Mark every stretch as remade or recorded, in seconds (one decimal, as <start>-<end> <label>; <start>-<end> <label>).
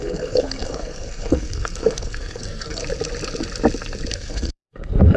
0.0-2.8 remade; 2.8-4.1 recorded; 4.1-5.2 remade